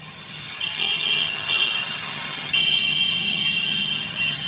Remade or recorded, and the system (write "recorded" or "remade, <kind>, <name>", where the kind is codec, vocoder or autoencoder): remade, vocoder, HiFi-GAN